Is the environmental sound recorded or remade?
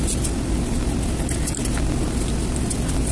recorded